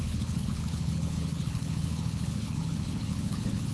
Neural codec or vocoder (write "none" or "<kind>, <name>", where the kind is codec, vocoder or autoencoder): codec, HILCodec